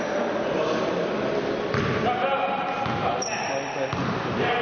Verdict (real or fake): real